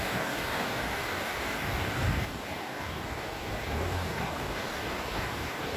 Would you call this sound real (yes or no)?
no